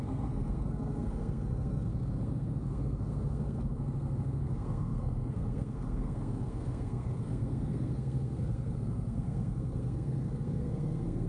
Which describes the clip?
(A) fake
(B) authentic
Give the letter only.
A